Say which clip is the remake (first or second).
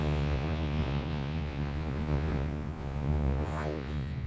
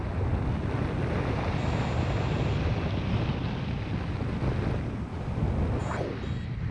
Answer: first